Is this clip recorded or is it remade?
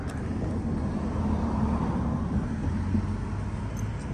recorded